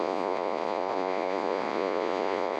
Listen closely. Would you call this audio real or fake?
fake